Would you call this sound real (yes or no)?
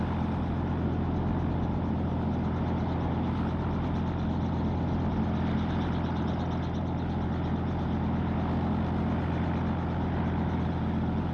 yes